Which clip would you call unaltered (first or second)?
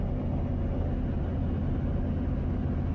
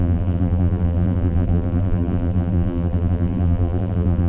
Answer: first